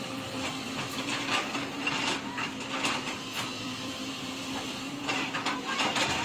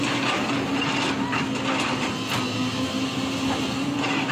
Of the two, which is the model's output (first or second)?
first